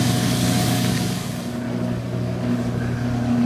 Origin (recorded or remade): remade